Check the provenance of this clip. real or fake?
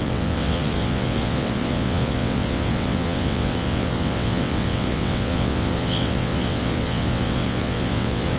fake